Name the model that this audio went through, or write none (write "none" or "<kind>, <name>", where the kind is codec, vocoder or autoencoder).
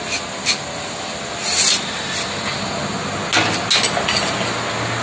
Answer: none